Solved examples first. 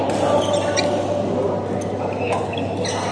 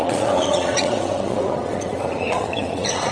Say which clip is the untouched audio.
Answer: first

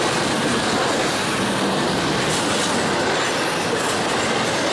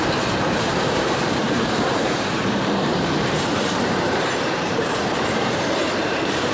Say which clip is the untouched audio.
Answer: first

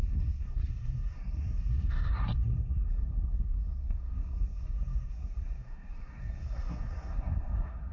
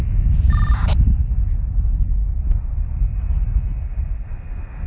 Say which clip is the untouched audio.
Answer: second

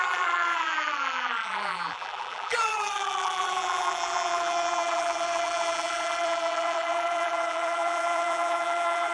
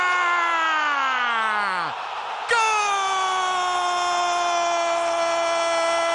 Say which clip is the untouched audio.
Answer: second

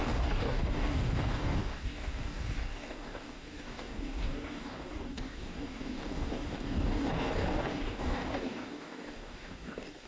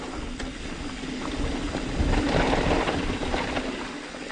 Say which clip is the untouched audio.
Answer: second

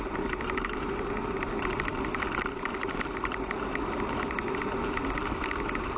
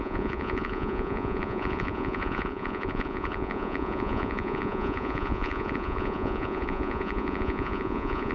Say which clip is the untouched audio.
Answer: first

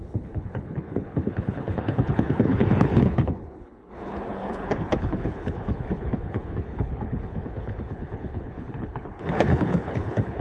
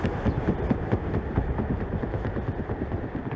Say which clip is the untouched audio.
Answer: second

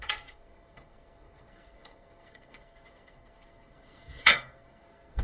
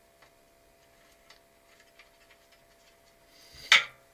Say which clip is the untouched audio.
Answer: second